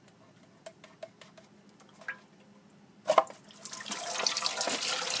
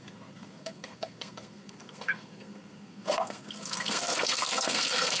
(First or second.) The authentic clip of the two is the first